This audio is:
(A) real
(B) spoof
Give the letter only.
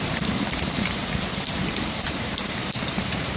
B